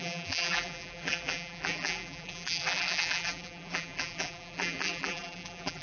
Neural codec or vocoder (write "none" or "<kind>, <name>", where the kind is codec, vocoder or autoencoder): vocoder, BigVGAN v2